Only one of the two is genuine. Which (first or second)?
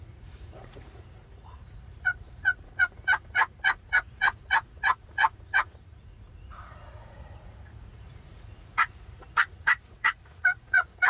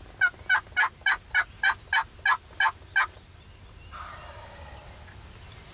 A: second